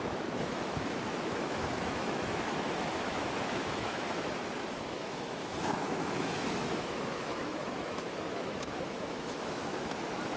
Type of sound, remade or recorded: remade